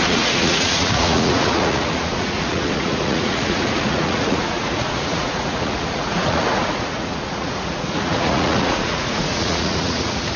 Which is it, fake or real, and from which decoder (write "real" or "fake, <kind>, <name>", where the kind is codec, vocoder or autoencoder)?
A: fake, vocoder, Vocos